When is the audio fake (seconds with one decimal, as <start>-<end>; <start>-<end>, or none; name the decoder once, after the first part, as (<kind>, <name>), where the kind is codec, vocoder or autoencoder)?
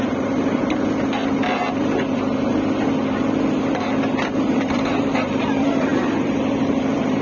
0.0-0.6 (vocoder, BigVGAN v2); 4.4-7.2